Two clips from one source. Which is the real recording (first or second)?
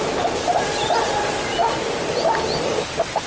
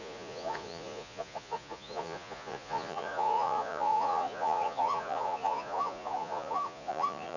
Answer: first